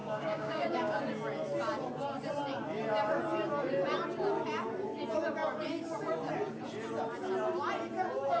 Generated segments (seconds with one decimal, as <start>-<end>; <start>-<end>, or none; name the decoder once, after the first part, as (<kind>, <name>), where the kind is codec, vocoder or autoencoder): 0.0-1.0 (codec, DAC)